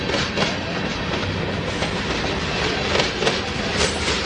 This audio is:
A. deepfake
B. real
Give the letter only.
B